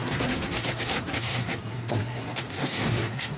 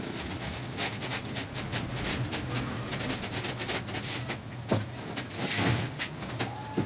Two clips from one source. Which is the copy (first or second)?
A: first